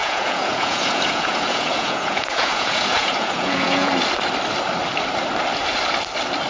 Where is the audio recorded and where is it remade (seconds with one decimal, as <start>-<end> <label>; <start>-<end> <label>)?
0.0-3.9 remade; 3.9-6.5 recorded